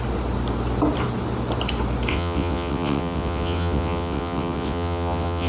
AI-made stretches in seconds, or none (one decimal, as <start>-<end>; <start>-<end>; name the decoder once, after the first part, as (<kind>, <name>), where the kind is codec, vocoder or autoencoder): 2.1-5.5 (vocoder, WaveNeXt)